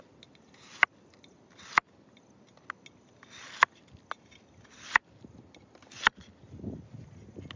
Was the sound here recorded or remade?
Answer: recorded